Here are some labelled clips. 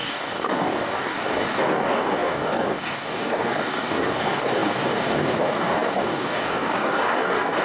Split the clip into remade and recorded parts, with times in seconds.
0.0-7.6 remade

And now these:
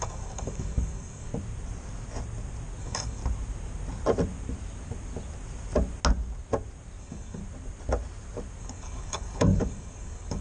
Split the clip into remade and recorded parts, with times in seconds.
0.0-1.3 remade; 1.3-2.8 recorded; 2.8-3.2 remade; 3.2-7.0 recorded; 7.0-7.4 remade; 7.4-8.6 recorded; 8.6-10.4 remade

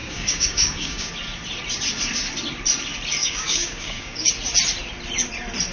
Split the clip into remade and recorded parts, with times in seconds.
0.0-1.1 remade; 1.1-3.2 recorded; 3.2-4.3 remade; 4.3-5.7 recorded